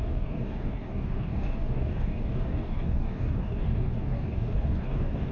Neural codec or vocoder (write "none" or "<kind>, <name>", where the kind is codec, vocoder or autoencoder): codec, DAC